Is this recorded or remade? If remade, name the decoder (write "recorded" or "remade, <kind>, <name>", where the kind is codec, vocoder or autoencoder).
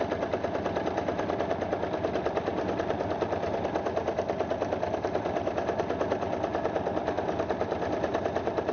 recorded